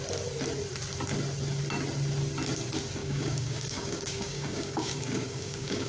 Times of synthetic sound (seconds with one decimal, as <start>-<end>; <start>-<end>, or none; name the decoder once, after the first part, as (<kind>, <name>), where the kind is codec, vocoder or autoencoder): 3.0-5.9 (codec, DAC)